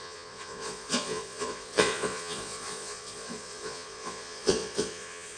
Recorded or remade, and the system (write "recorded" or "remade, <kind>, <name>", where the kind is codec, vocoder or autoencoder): remade, vocoder, Vocos